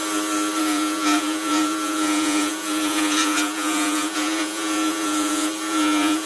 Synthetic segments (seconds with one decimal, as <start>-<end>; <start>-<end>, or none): 0.6-6.3